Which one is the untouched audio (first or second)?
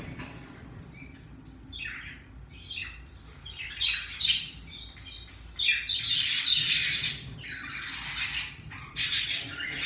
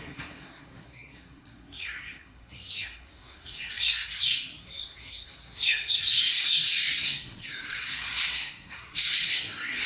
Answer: first